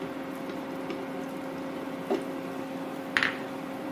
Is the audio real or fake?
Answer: real